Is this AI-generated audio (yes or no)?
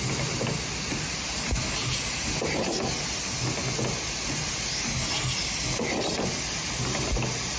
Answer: no